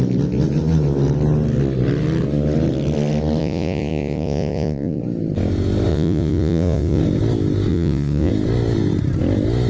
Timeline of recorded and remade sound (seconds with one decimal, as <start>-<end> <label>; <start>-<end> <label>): 0.0-3.4 recorded; 3.4-5.0 remade; 5.0-5.9 recorded; 5.9-7.0 remade; 7.0-7.7 recorded; 7.7-8.3 remade; 8.3-9.7 recorded